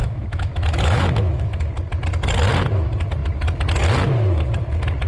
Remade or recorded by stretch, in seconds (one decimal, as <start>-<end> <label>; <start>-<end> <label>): 0.0-1.7 remade; 1.7-5.1 recorded